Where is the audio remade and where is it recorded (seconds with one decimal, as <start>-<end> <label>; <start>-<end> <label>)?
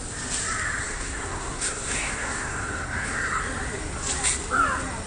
0.0-0.8 recorded; 0.8-3.4 remade; 3.4-5.1 recorded